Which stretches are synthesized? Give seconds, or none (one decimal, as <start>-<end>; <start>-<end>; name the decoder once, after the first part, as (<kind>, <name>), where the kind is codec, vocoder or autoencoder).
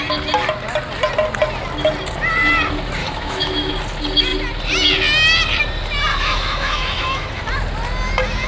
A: 3.0-3.7 (autoencoder, DAC-VAE); 6.1-7.4